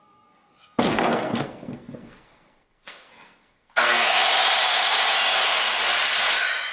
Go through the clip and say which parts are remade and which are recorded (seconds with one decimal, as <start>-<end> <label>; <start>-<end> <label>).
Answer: 0.0-4.2 remade; 4.2-6.7 recorded